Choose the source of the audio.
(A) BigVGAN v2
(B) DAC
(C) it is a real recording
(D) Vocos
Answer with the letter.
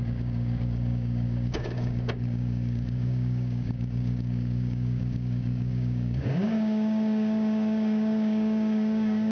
B